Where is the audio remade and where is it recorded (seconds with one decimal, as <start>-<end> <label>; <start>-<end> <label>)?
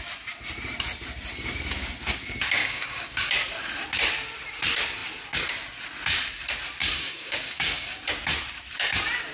0.0-2.6 recorded; 2.6-3.2 remade; 3.2-6.8 recorded; 6.8-8.0 remade; 8.0-9.3 recorded